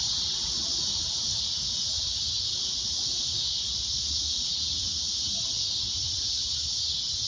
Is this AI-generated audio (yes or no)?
no